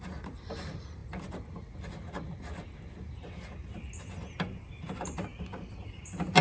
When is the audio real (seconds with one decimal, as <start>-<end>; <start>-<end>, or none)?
0.0-5.3; 6.0-6.4